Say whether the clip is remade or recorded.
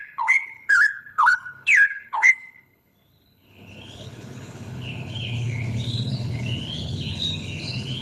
remade